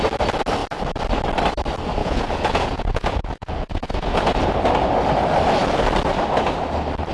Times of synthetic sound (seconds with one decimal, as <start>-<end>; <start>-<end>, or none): 2.0-4.4